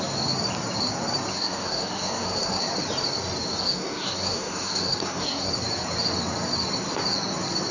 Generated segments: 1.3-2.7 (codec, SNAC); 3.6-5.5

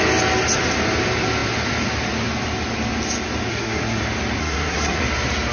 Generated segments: 3.5-4.0 (codec, SNAC); 4.4-5.0

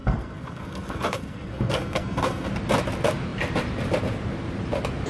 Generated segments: 0.0-2.5 (codec, SNAC)

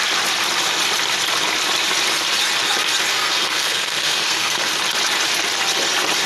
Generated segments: 3.1-4.6 (codec, SNAC)

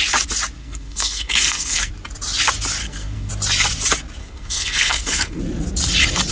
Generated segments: 0.6-1.9 (codec, SNAC); 2.8-3.3; 4.2-5.4

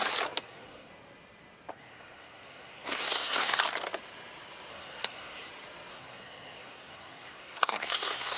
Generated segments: 0.4-0.9 (codec, SNAC); 1.7-3.6; 4.7-5.5; 5.9-8.4

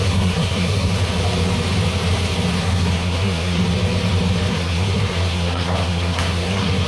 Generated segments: 0.0-0.9 (codec, SNAC); 2.6-3.6; 4.5-6.9